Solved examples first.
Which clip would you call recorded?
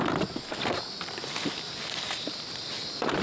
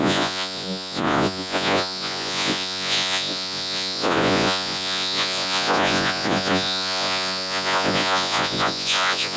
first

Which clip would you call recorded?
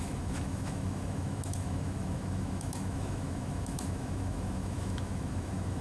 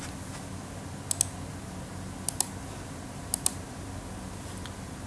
second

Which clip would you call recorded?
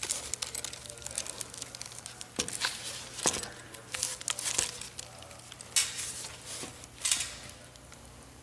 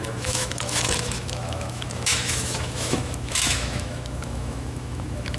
first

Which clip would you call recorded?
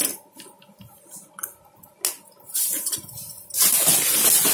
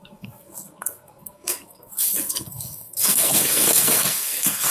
first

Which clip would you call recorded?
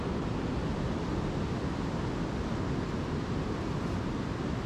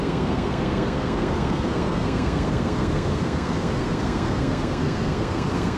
first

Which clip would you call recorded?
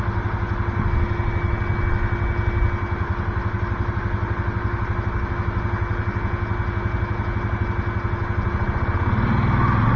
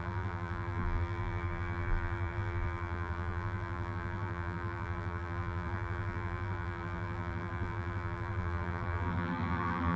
first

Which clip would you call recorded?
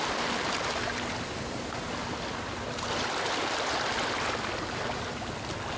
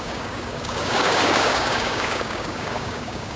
first